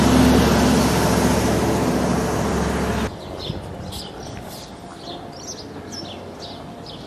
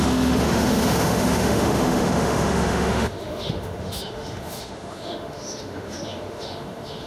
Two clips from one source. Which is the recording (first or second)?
first